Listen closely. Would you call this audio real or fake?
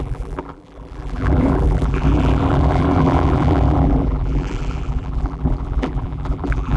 fake